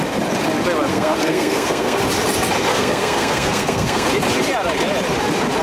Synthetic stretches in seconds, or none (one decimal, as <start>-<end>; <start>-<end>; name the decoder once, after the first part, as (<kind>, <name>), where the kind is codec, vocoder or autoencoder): 0.9-2.0 (codec, SNAC); 2.7-4.1